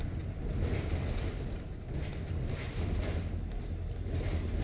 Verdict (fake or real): real